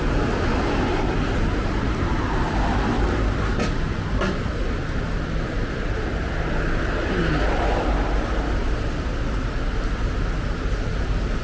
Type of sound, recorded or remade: recorded